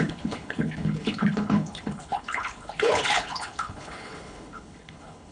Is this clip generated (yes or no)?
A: yes